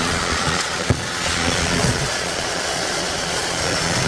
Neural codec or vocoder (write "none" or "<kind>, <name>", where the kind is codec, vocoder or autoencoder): vocoder, Vocos